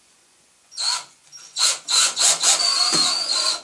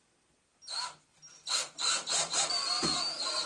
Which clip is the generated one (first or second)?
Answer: first